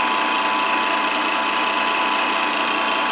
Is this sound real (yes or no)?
yes